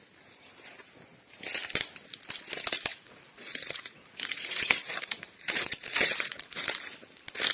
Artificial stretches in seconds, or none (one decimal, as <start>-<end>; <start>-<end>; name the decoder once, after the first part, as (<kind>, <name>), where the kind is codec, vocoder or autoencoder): 2.9-6.8 (vocoder, Vocos)